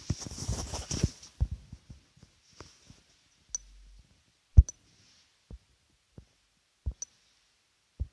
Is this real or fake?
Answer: real